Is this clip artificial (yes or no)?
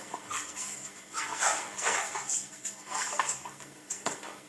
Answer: yes